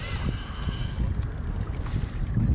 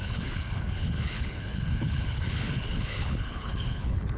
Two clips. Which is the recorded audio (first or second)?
first